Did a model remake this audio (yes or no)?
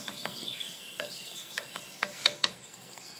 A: yes